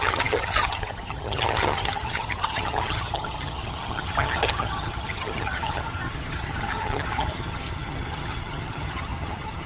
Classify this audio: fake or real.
fake